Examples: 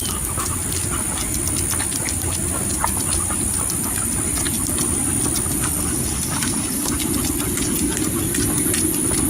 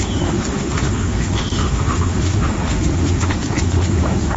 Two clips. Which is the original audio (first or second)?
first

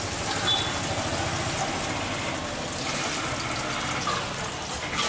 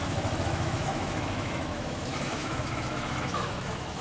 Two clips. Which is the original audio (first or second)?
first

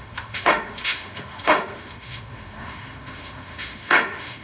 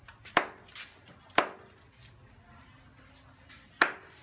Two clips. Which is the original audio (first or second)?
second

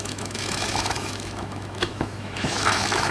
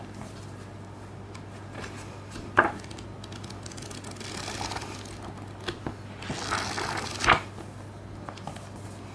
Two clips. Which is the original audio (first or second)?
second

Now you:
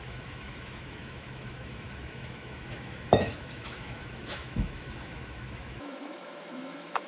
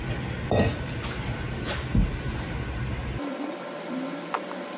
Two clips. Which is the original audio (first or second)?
second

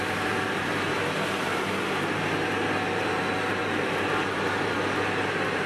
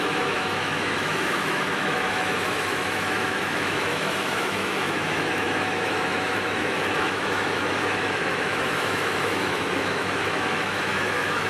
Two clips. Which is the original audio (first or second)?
first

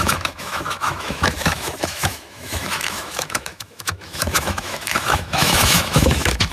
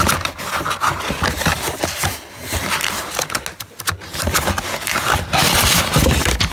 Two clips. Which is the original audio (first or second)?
second